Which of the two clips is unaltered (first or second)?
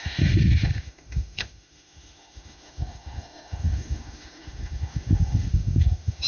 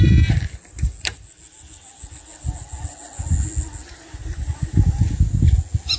second